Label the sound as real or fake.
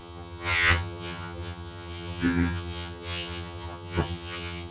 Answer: fake